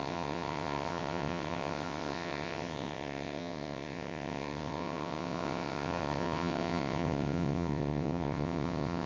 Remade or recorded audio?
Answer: remade